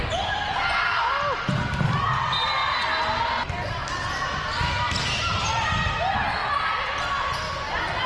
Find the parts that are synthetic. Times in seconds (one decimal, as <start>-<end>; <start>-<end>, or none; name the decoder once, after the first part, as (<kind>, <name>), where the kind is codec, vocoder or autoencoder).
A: none